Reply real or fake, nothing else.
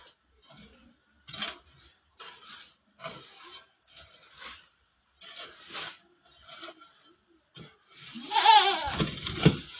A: real